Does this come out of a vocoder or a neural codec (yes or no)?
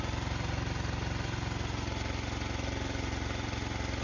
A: no